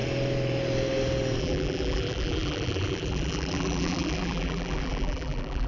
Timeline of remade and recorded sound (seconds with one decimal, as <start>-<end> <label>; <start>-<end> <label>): 0.0-1.4 recorded; 1.4-5.7 remade